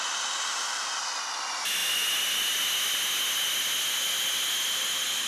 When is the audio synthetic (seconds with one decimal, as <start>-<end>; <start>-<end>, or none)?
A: none